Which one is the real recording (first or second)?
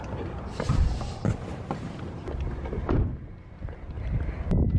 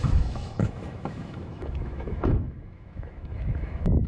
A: first